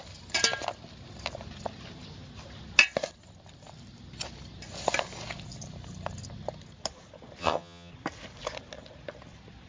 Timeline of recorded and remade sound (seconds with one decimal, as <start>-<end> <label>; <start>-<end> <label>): 0.0-7.4 recorded; 7.4-7.9 remade; 7.9-9.7 recorded